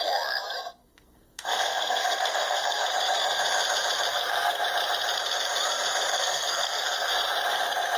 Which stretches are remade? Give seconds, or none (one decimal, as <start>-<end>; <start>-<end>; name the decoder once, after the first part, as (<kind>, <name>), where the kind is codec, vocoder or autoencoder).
0.8-2.9 (codec, SNAC); 4.1-4.6; 6.1-7.1